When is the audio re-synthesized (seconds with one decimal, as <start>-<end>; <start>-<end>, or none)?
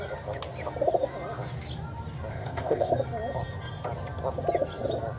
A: 2.3-2.9